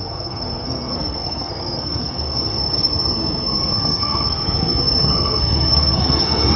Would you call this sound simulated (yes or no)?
yes